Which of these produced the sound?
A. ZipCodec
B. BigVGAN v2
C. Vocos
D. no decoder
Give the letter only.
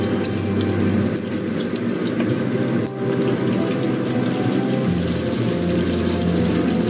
D